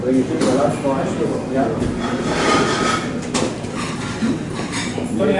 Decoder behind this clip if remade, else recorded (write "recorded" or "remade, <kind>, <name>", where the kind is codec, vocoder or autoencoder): recorded